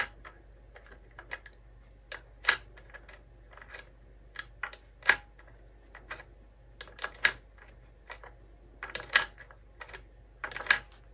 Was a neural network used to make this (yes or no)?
no